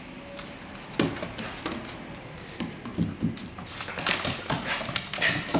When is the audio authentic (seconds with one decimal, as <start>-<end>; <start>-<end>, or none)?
0.0-5.6